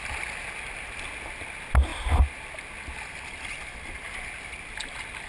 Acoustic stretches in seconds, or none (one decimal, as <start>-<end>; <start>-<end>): 0.0-5.3